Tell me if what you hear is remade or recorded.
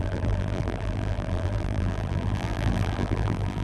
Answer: remade